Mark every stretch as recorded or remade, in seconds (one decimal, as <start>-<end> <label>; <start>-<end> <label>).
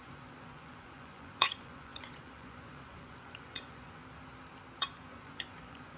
0.0-4.0 remade; 4.0-4.8 recorded; 4.8-6.0 remade